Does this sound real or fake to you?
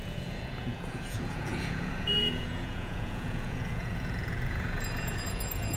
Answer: fake